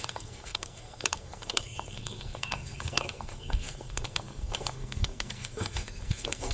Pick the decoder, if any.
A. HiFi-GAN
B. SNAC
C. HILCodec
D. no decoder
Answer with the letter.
B